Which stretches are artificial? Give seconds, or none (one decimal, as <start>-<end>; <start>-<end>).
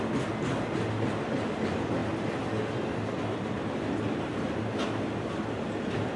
none